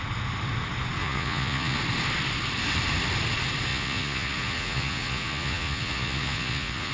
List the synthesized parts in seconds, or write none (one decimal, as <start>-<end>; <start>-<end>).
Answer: 1.0-1.8; 3.7-6.9